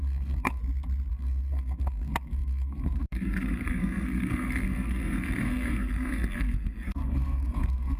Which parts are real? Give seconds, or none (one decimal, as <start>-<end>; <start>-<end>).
0.6-1.1